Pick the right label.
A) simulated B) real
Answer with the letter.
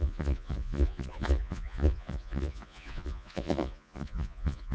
A